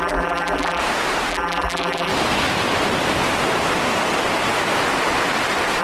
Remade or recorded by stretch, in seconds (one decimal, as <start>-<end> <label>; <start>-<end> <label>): 0.0-0.8 remade; 0.8-1.3 recorded; 1.3-2.1 remade; 2.1-5.8 recorded